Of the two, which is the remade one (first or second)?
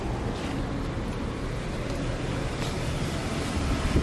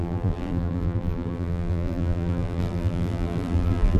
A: second